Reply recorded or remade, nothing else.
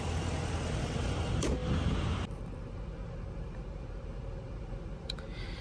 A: remade